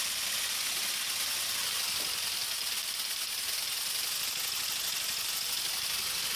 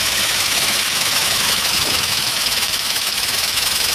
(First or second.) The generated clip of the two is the second